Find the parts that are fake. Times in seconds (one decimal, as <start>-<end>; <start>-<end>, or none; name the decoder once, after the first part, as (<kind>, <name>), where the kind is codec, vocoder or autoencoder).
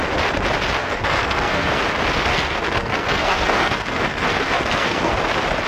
0.8-1.8 (codec, SNAC); 2.3-5.1